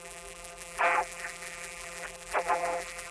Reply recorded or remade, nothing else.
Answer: remade